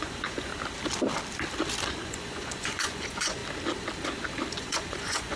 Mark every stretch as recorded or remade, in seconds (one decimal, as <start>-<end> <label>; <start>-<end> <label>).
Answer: 0.0-0.5 remade; 0.5-1.9 recorded; 1.9-3.4 remade; 3.4-4.5 recorded; 4.5-5.4 remade